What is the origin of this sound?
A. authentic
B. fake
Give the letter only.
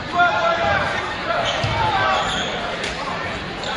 B